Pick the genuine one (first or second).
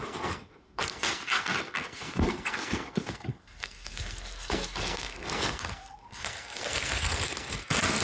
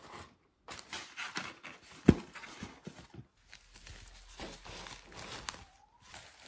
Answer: second